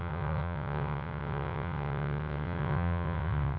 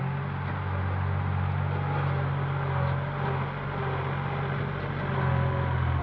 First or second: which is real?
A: second